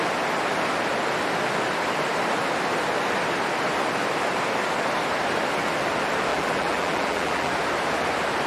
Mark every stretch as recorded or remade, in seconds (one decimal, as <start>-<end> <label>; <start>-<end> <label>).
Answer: 0.0-6.3 recorded; 6.3-7.5 remade; 7.5-8.5 recorded